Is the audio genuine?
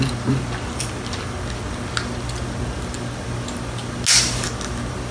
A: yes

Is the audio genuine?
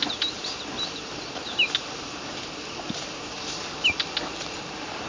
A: yes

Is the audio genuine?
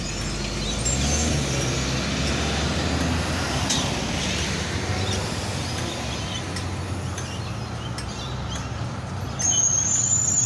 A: yes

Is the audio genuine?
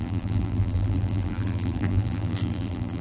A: no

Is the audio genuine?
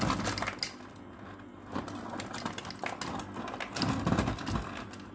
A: yes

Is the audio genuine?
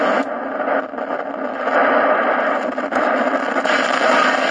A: yes